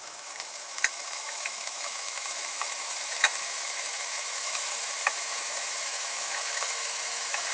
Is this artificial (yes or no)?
yes